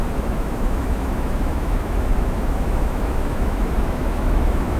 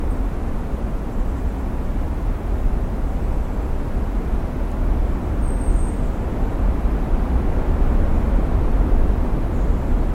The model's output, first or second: first